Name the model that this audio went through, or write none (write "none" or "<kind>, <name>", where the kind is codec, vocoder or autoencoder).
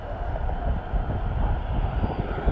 none